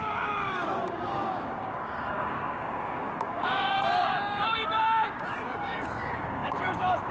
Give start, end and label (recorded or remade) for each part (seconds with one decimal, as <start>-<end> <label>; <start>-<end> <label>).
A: 0.0-7.1 remade